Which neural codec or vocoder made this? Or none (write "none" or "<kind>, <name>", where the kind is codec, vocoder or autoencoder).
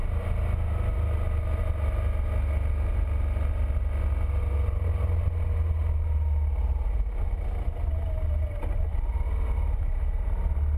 none